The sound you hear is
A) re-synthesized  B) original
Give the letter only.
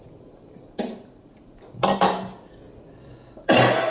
B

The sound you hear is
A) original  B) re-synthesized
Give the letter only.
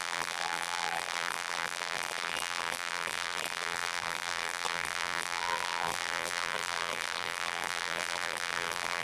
B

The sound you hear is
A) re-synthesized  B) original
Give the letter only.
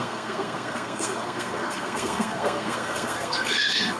A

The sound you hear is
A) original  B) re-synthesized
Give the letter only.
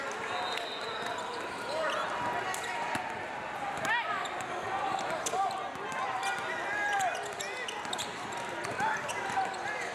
A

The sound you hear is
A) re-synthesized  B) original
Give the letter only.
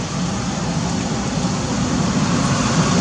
B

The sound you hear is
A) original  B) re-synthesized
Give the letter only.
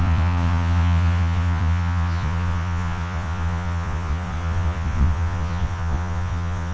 B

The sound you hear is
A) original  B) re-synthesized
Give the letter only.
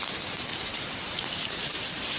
A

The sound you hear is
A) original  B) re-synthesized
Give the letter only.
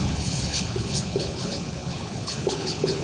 B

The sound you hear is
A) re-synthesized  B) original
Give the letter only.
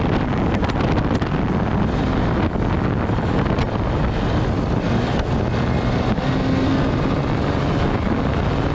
B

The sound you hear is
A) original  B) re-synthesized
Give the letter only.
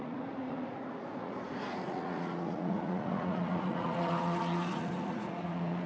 B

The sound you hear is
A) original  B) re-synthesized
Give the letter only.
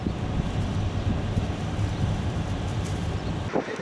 B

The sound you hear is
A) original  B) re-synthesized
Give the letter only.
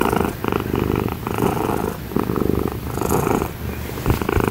A